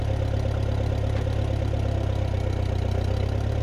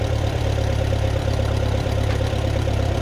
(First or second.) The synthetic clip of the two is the second